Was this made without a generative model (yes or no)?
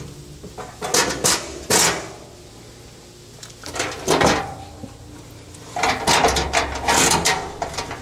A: yes